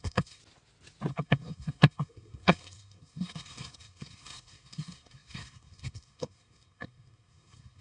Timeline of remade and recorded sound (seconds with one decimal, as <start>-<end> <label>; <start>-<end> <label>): 0.0-0.4 remade; 0.4-1.1 recorded; 1.1-7.8 remade